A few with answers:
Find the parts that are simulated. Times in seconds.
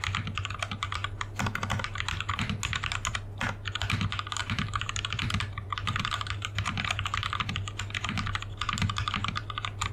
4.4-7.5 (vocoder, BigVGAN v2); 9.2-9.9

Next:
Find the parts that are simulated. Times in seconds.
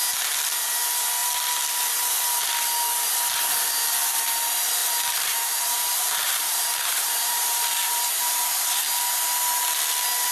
4.8-8.8 (vocoder, BigVGAN v2)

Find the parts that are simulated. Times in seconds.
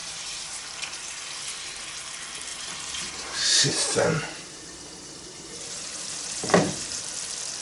0.0-0.6 (vocoder, BigVGAN v2); 2.5-7.1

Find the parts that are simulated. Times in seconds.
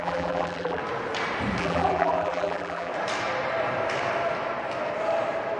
0.0-0.8 (vocoder, BigVGAN v2); 1.6-2.9